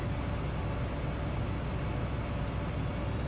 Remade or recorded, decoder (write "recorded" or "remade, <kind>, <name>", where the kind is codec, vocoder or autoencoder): recorded